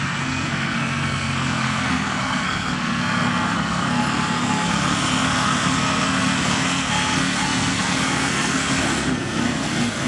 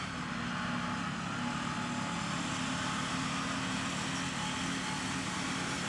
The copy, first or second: first